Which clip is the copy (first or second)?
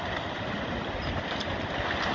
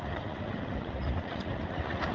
second